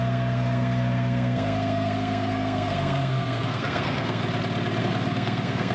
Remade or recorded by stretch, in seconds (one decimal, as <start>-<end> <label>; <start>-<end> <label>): 0.0-4.2 remade; 4.2-4.8 recorded; 4.8-5.7 remade